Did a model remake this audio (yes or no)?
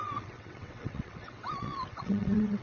yes